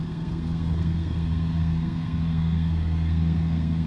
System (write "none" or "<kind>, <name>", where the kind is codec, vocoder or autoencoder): codec, SNAC